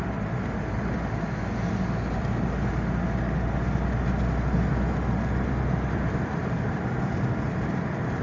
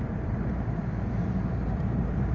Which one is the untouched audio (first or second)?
first